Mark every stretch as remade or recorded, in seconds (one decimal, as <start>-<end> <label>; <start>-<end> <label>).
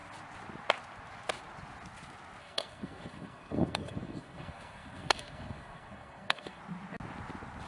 0.0-2.4 recorded; 2.4-6.6 remade; 6.6-7.7 recorded